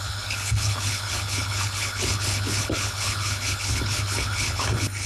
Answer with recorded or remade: remade